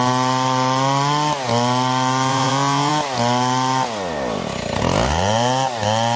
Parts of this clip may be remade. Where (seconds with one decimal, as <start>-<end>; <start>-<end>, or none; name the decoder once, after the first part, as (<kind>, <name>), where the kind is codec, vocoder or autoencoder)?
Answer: 2.3-2.9 (vocoder, Vocos)